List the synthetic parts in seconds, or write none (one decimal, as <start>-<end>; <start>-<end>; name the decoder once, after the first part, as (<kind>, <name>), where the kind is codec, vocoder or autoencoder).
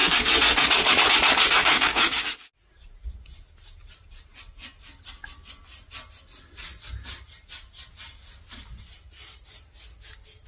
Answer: 1.6-2.3 (codec, DAC)